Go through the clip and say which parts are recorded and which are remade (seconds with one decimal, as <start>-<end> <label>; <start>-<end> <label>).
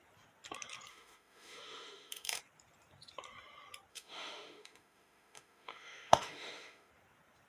0.0-0.9 recorded; 0.9-2.4 remade; 2.4-3.9 recorded; 3.9-6.9 remade; 6.9-7.5 recorded